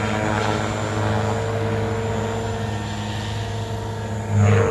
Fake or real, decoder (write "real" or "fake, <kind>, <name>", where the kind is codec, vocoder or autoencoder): real